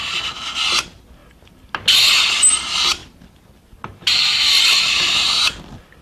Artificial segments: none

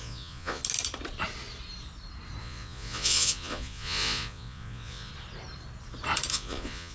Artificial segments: 0.0-0.6 (vocoder, Vocos); 2.4-5.1; 6.3-6.9

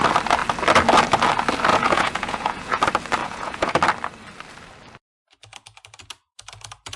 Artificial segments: 1.7-2.8 (vocoder, Vocos); 3.2-3.7

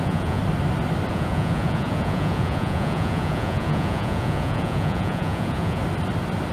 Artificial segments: 0.0-0.4 (vocoder, Vocos); 1.1-5.8